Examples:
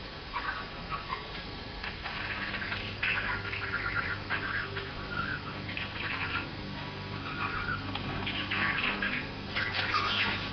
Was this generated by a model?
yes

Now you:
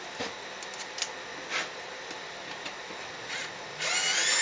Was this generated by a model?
no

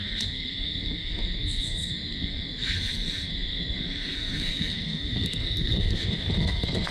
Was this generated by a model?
yes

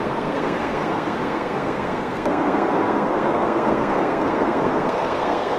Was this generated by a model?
yes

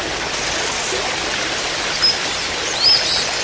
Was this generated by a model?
no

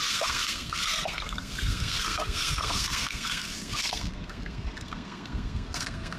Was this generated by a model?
yes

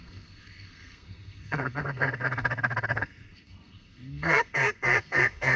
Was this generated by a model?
yes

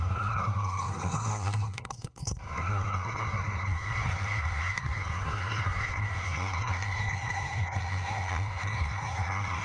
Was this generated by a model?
yes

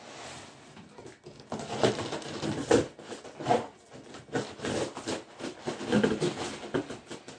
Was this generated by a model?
no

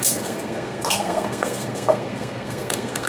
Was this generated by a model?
yes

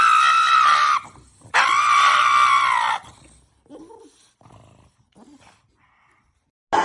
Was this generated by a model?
no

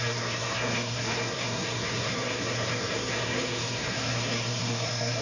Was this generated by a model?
yes